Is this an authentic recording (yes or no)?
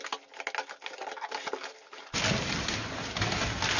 yes